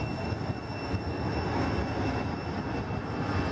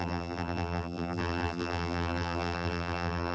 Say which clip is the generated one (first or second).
second